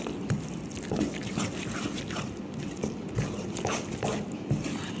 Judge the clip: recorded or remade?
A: recorded